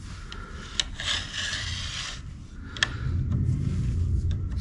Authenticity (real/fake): real